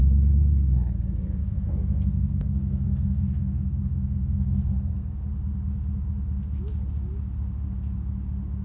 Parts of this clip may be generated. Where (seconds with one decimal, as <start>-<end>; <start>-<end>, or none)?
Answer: 1.4-5.1